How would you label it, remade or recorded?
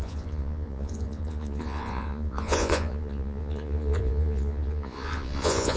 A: remade